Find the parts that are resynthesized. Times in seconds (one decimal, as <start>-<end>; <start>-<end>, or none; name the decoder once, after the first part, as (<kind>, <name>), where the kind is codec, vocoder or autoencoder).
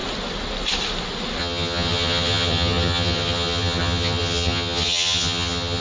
1.4-5.8 (vocoder, HiFi-GAN)